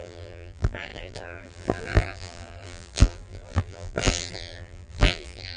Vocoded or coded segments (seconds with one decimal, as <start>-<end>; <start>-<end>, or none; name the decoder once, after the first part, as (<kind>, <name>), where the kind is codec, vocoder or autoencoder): 0.0-5.6 (vocoder, BigVGAN v2)